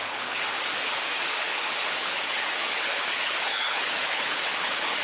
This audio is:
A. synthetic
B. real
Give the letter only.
A